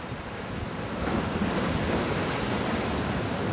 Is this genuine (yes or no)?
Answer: yes